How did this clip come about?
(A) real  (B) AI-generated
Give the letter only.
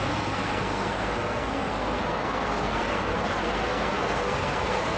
B